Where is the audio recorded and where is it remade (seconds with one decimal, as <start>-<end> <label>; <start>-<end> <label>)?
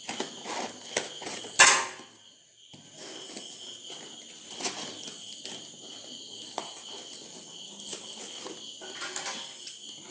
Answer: 0.0-7.9 recorded; 7.9-8.4 remade; 8.4-10.1 recorded